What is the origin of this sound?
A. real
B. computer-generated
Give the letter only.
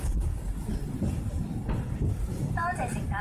A